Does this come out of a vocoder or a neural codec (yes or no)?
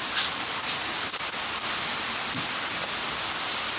no